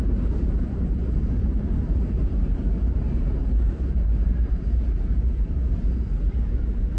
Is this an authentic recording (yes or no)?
no